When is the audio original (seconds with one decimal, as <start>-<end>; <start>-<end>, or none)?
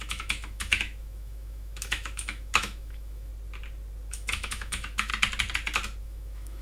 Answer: 3.3-4.1; 5.1-6.0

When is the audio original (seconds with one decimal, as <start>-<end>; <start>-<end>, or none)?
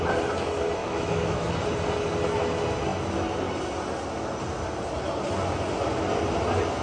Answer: 0.0-0.8; 1.5-6.8